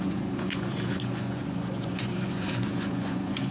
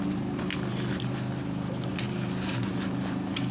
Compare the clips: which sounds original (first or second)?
second